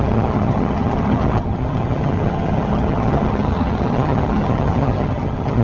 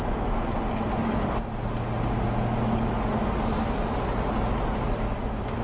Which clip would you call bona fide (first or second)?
second